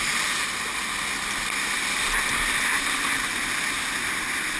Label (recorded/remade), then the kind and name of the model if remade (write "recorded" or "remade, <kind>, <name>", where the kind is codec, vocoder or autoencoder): recorded